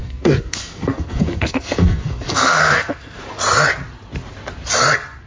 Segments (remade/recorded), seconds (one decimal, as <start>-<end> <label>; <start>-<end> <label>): 0.0-3.2 remade; 3.2-5.3 recorded